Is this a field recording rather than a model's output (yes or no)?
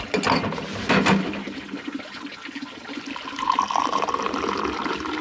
yes